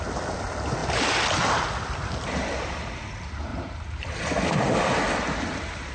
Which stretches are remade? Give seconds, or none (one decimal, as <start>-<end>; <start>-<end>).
3.5-4.2